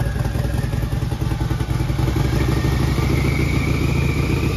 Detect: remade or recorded recorded